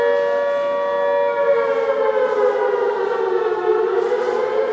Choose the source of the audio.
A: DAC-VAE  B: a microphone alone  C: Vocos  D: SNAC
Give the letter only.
B